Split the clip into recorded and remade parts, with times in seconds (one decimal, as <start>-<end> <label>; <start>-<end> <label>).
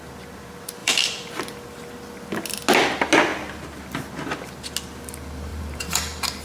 0.0-0.8 recorded; 0.8-1.3 remade; 1.3-5.5 recorded; 5.5-6.4 remade